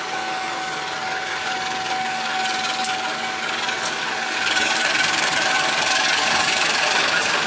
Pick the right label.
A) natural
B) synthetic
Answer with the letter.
B